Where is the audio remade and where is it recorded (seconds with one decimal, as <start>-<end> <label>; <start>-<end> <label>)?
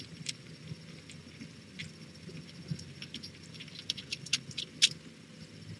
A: 0.0-5.8 recorded